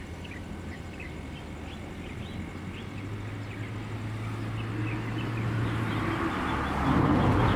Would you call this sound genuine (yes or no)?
yes